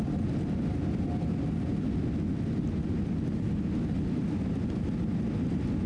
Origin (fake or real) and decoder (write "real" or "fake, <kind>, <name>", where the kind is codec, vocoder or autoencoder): real